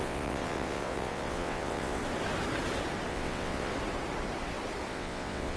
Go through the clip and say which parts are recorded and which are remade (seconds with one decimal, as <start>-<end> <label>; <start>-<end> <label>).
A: 0.0-2.0 remade; 2.0-3.1 recorded; 3.1-3.7 remade; 3.7-4.9 recorded; 4.9-5.6 remade

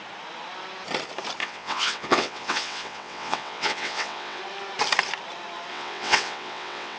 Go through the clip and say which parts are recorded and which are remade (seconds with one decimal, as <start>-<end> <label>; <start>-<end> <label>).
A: 0.0-1.4 recorded; 1.4-4.4 remade; 4.4-5.7 recorded; 5.7-7.0 remade

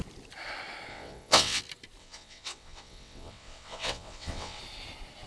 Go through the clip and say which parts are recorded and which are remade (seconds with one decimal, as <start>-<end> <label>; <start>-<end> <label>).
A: 0.0-0.9 recorded; 0.9-1.6 remade; 1.6-2.0 recorded; 2.0-4.6 remade; 4.6-5.3 recorded

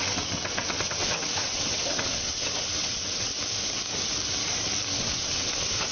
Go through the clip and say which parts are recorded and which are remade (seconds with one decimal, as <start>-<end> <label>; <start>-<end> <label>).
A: 0.0-3.3 remade; 3.3-5.0 recorded; 5.0-5.9 remade

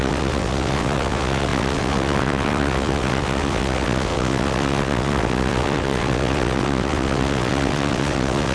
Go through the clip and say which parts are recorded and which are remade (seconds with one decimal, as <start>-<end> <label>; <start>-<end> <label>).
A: 0.0-8.5 remade

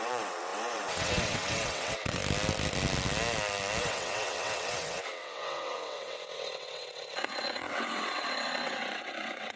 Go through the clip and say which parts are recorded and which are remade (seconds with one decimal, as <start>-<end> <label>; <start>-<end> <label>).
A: 0.0-2.2 remade; 2.2-3.8 recorded; 3.8-9.6 remade